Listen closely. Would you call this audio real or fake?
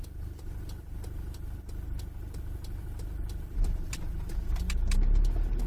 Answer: real